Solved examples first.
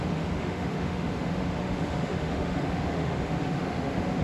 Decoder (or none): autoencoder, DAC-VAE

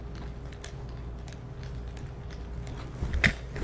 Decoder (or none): none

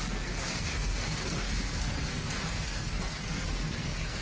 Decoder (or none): codec, SNAC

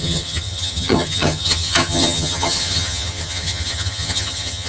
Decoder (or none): vocoder, HiFi-GAN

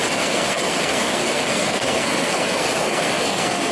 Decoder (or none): codec, SNAC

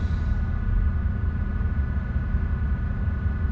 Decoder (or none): none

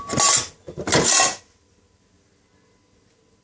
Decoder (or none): none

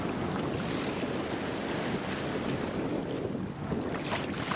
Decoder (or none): none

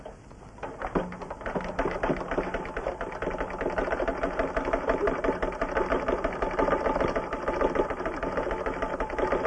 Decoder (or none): none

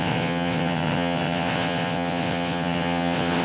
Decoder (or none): vocoder, WaveNeXt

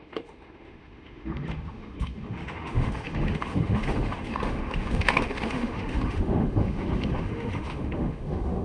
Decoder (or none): autoencoder, DAC-VAE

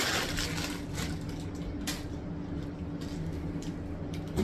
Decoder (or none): none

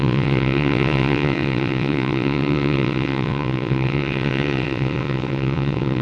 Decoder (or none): vocoder, WaveNeXt